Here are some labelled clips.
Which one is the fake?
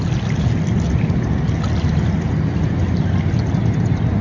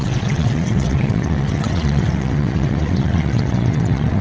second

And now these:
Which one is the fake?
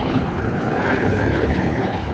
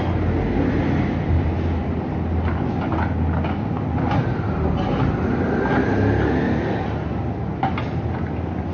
first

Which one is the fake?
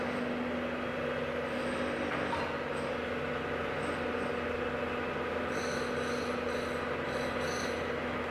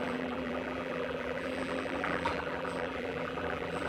second